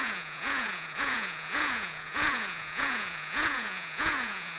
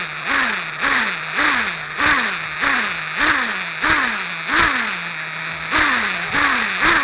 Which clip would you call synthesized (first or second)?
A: first